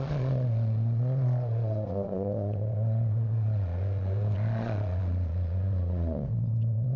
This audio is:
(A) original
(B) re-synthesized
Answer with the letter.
B